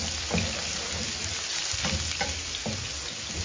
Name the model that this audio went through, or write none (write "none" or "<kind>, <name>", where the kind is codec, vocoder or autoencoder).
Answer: none